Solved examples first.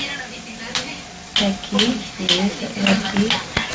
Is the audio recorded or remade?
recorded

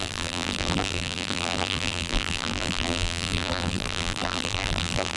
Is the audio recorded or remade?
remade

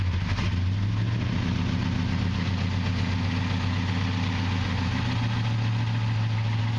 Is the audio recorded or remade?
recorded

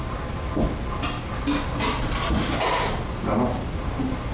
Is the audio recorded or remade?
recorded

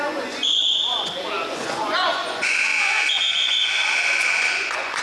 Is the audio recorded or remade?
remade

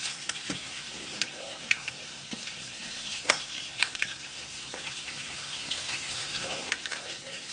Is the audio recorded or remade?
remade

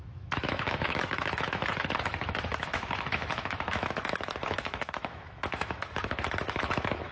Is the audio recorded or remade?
remade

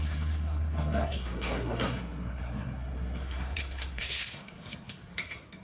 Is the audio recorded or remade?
remade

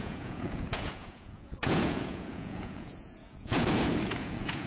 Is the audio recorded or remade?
remade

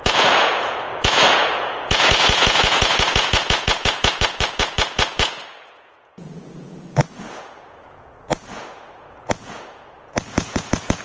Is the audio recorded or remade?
remade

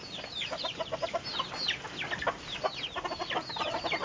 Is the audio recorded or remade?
recorded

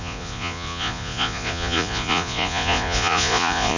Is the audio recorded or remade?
remade